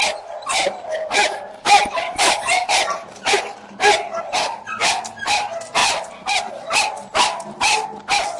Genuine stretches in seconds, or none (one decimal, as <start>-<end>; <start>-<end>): 0.0-8.4